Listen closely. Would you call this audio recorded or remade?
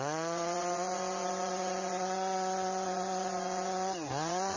remade